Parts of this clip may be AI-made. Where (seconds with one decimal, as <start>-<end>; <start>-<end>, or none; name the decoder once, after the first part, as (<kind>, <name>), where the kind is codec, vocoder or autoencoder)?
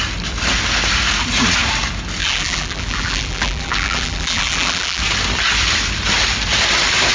2.2-5.0 (vocoder, BigVGAN v2)